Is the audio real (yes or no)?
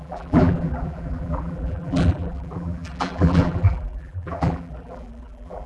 no